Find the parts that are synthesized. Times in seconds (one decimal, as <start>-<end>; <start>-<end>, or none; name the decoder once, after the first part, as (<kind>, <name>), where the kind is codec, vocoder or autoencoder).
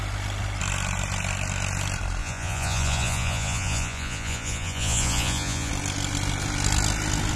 2.2-5.7 (vocoder, Vocos)